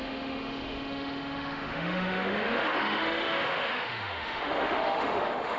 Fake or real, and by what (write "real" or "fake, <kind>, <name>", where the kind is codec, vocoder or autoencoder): fake, autoencoder, DAC-VAE